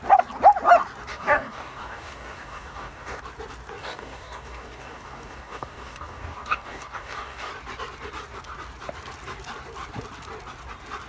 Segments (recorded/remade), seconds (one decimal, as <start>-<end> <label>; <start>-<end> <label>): 0.0-1.1 recorded; 1.1-3.2 remade; 3.2-3.8 recorded; 3.8-7.5 remade; 7.5-11.1 recorded